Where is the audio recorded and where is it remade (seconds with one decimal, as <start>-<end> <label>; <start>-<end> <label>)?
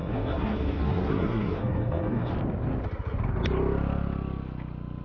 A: 0.0-2.3 remade; 2.3-5.0 recorded